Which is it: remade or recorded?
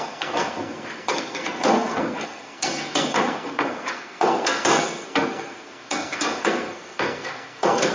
remade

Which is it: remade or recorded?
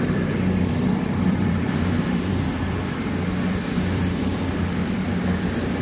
remade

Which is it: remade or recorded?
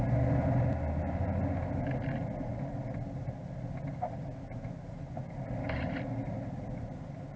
recorded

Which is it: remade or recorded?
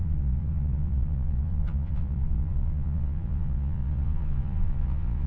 remade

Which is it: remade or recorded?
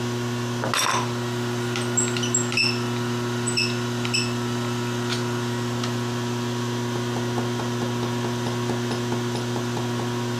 recorded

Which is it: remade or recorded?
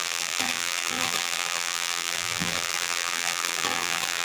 remade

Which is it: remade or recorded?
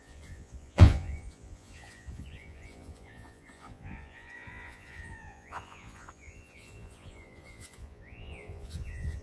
remade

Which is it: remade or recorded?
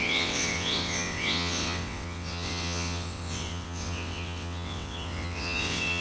remade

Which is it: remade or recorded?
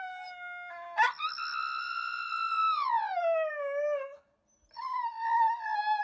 recorded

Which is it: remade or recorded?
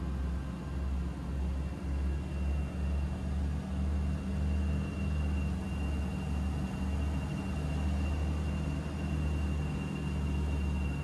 recorded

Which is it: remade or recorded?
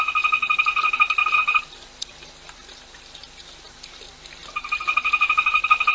remade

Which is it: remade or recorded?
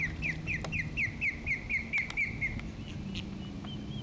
recorded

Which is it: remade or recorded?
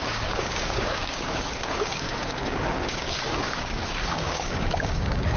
remade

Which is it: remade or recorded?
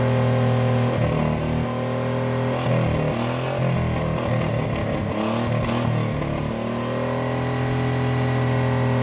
recorded